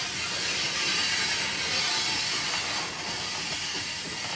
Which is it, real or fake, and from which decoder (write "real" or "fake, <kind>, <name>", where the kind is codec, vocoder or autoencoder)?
real